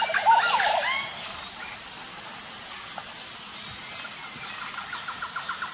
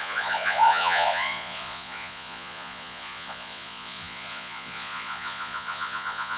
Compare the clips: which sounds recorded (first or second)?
first